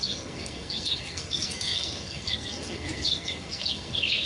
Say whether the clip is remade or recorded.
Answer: remade